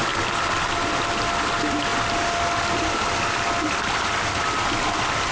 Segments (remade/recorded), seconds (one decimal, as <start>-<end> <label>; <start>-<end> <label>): 0.0-5.3 recorded